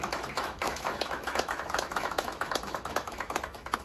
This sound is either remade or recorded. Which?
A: remade